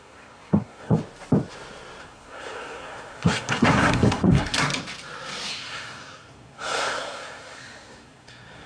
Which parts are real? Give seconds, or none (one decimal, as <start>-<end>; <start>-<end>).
1.0-2.0; 4.7-5.5